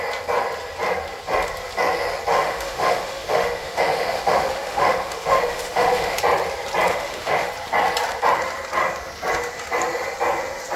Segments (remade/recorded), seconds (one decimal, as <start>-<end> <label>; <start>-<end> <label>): 0.0-2.3 recorded; 2.3-6.2 remade; 6.2-6.9 recorded; 6.9-7.5 remade; 7.5-10.8 recorded